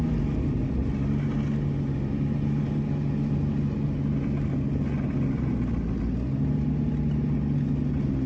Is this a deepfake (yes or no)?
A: no